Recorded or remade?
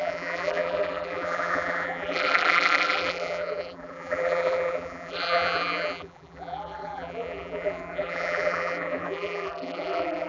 remade